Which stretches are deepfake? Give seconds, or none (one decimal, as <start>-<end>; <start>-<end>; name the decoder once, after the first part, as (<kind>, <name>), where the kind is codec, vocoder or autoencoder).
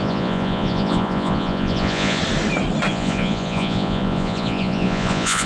0.0-2.2 (vocoder, Vocos); 2.9-5.5